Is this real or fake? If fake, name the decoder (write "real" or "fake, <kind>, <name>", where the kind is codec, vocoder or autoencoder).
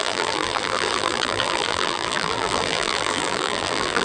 fake, vocoder, BigVGAN v2